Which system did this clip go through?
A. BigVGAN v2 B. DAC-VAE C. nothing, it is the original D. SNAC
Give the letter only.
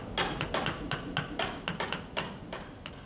C